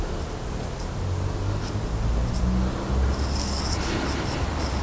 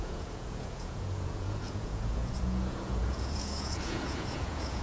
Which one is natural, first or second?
first